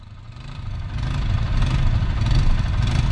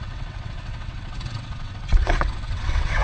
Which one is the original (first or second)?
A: first